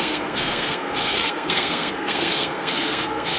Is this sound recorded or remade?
remade